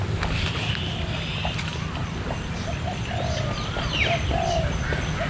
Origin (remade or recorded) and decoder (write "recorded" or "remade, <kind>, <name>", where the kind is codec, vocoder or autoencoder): recorded